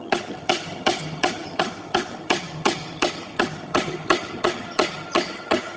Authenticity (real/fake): fake